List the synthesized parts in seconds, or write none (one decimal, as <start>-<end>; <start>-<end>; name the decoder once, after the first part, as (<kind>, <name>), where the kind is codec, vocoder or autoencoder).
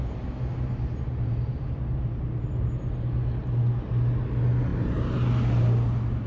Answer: none